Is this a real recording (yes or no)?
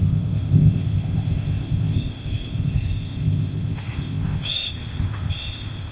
no